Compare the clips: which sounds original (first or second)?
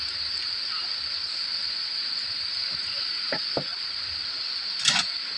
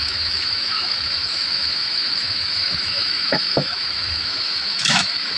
first